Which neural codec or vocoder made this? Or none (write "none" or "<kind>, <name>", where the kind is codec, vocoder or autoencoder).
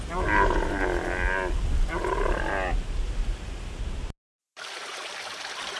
none